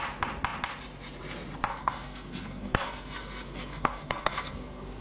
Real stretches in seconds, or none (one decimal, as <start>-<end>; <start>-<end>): 0.0-1.7